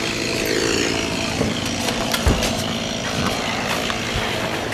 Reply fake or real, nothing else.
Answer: real